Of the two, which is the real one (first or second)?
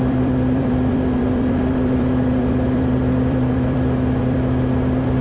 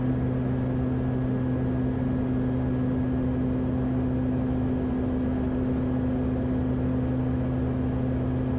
second